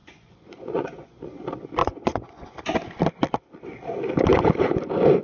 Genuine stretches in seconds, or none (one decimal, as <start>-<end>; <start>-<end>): 1.1-1.8; 2.6-5.2